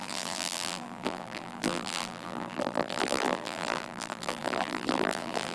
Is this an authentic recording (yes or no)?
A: no